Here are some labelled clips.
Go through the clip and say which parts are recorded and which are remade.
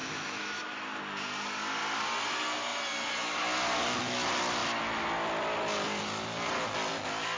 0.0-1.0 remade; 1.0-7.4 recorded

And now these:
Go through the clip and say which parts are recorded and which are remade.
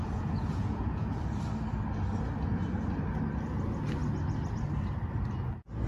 0.0-1.2 remade; 1.2-5.9 recorded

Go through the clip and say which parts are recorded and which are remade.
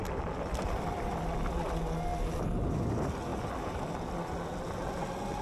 0.0-5.4 recorded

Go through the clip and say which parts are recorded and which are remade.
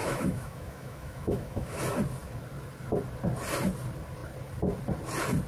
0.0-1.8 remade; 1.8-5.5 recorded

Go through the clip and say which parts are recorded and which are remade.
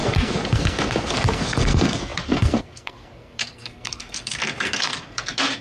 0.0-5.6 remade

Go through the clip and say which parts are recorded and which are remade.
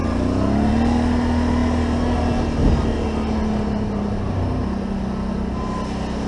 0.0-6.3 recorded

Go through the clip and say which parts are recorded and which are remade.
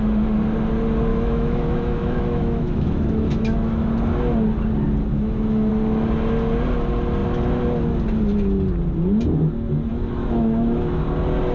0.0-1.1 recorded; 1.1-3.9 remade; 3.9-5.1 recorded; 5.1-5.7 remade; 5.7-9.9 recorded; 9.9-11.0 remade; 11.0-11.5 recorded